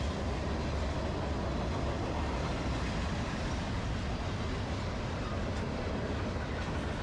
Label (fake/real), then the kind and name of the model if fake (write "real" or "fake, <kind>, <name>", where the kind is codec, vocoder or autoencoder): real